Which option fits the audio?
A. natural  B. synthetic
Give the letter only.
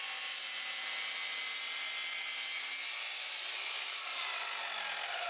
A